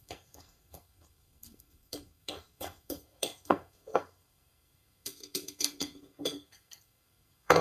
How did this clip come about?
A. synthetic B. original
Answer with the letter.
A